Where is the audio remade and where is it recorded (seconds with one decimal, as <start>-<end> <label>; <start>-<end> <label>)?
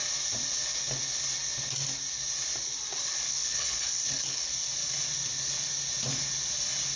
0.0-3.3 recorded; 3.3-4.5 remade; 4.5-7.0 recorded